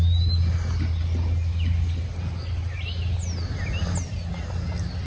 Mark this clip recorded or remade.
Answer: recorded